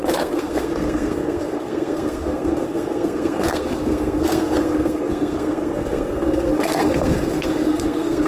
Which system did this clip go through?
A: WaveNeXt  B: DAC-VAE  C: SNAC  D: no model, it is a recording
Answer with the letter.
C